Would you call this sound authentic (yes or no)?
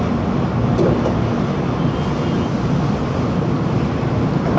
yes